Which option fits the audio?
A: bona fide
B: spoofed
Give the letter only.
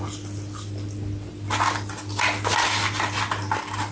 A